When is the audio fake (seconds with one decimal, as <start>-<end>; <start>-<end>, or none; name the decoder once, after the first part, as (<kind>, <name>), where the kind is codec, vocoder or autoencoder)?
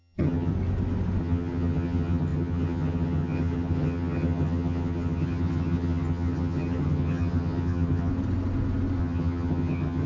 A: 0.0-0.5 (vocoder, HiFi-GAN); 1.2-8.1; 9.0-10.1